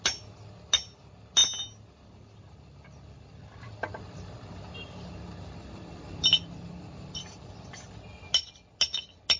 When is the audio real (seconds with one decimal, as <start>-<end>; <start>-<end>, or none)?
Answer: 0.0-9.4